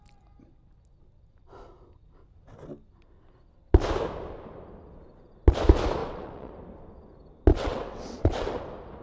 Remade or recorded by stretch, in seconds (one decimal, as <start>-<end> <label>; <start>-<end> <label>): 0.0-6.0 recorded; 6.0-6.5 remade; 6.5-7.5 recorded; 7.5-8.6 remade; 8.6-9.0 recorded